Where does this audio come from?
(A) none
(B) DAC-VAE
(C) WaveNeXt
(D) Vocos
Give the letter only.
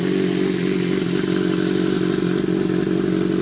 A